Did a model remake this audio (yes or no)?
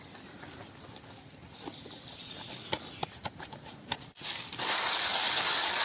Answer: no